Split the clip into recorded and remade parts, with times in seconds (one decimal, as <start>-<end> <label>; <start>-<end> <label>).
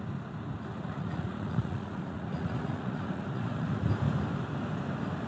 0.0-0.7 recorded; 0.7-3.9 remade; 3.9-5.3 recorded